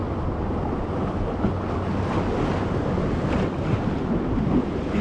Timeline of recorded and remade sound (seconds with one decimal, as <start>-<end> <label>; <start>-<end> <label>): 0.0-5.0 recorded